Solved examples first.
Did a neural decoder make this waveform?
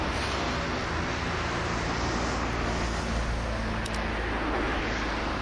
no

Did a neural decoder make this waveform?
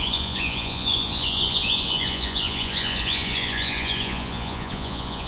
yes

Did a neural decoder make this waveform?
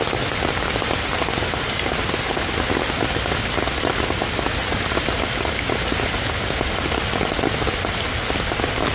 no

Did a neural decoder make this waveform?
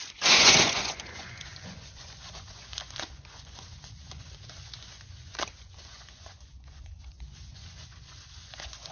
yes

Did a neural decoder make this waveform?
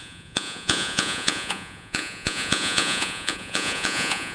yes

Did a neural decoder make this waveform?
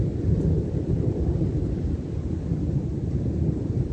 no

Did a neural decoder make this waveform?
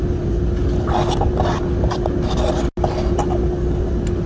no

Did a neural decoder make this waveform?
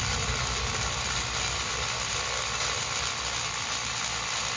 no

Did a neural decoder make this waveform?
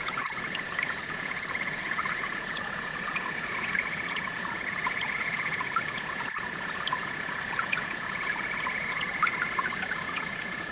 yes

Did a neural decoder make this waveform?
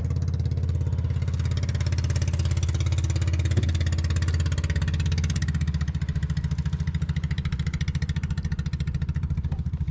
no